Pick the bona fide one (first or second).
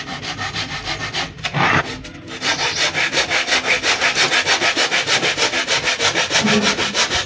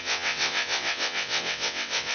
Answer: first